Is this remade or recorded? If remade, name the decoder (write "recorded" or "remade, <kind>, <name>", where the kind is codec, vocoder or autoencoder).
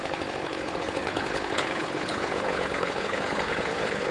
remade, codec, HILCodec